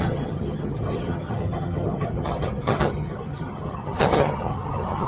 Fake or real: fake